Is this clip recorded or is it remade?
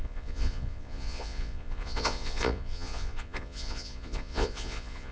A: remade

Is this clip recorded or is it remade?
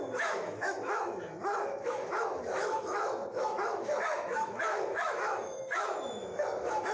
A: remade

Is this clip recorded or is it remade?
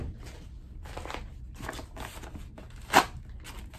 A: recorded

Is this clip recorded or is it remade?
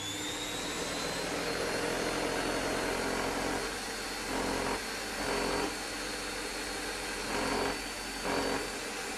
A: recorded